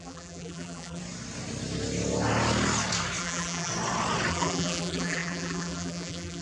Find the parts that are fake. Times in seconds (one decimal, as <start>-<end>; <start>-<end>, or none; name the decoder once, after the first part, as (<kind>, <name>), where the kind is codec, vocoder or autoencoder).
0.0-1.0 (vocoder, BigVGAN v2); 3.2-3.7; 4.3-6.4

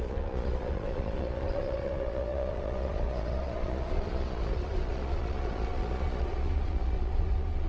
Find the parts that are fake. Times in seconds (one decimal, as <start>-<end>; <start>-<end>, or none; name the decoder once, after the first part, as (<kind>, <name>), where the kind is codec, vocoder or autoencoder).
0.0-7.7 (vocoder, Vocos)